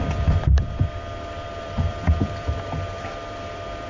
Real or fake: fake